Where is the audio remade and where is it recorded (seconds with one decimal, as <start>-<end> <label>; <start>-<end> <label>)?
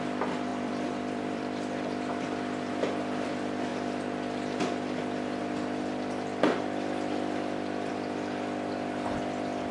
0.0-0.5 recorded; 0.5-2.7 remade; 2.7-9.7 recorded